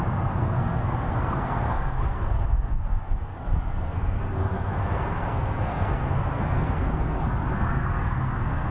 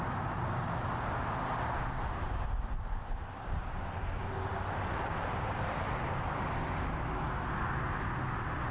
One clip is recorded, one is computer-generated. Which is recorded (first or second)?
second